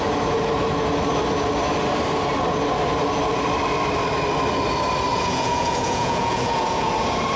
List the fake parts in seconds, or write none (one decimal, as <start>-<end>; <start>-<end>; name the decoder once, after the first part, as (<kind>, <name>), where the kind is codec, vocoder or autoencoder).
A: 5.1-6.9 (vocoder, Vocos)